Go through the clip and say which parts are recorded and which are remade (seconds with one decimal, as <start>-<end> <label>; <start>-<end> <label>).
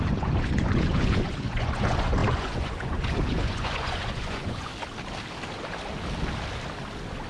0.0-4.7 remade; 4.7-7.3 recorded